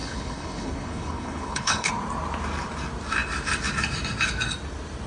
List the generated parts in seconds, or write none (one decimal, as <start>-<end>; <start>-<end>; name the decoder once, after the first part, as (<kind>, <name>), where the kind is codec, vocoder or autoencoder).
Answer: 0.0-1.9 (codec, HILCodec)

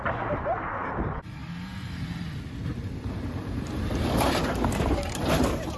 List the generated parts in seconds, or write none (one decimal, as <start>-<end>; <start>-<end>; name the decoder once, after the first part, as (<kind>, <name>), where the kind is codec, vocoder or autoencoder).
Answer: none

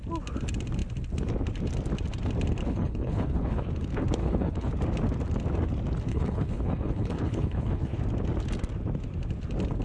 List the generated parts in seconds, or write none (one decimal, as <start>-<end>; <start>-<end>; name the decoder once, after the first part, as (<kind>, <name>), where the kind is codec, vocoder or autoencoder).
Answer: 2.6-3.7 (codec, HILCodec); 4.2-4.7; 6.1-8.0